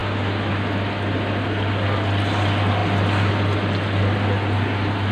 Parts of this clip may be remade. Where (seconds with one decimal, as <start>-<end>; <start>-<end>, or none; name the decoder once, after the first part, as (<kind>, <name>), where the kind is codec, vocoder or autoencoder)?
none

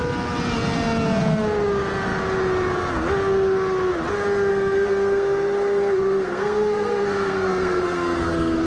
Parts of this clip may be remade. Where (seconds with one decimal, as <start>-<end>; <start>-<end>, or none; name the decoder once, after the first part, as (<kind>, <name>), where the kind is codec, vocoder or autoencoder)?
4.5-8.7 (codec, SNAC)

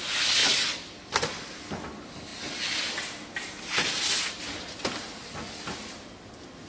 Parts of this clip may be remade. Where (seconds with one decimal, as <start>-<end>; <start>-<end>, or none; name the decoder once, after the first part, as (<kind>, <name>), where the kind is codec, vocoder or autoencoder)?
none

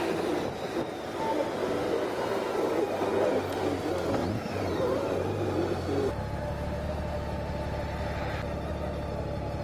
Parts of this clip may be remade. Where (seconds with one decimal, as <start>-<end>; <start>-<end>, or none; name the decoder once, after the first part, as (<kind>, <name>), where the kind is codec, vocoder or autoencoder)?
4.2-6.2 (vocoder, BigVGAN v2)

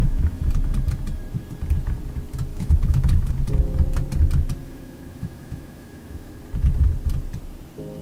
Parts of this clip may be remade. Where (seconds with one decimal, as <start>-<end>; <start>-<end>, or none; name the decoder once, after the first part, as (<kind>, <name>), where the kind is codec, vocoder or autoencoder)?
0.0-0.5 (autoencoder, DAC-VAE); 2.5-3.3; 4.6-6.3

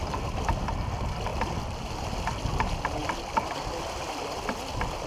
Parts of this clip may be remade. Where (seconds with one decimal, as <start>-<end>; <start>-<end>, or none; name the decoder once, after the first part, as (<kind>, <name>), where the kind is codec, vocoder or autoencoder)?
none